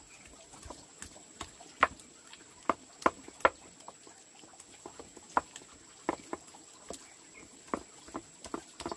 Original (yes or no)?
yes